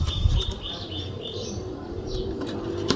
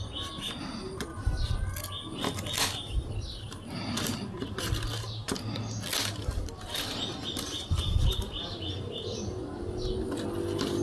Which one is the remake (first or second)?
first